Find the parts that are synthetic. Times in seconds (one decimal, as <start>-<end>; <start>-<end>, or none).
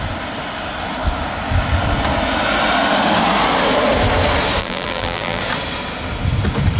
4.6-5.4